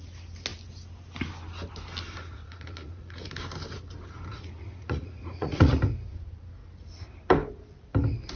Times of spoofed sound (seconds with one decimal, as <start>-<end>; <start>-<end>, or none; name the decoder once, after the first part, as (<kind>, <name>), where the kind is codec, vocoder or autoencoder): 2.3-3.3 (vocoder, Vocos); 4.3-5.8